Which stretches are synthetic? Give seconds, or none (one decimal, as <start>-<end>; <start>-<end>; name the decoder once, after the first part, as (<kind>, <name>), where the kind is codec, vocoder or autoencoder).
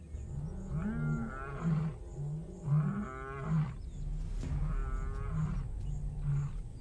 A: none